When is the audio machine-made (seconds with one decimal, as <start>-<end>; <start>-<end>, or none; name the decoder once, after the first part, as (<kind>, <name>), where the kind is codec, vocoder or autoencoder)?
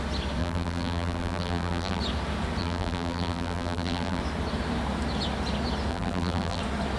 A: 0.4-2.0 (vocoder, BigVGAN v2); 2.6-4.2; 5.9-6.6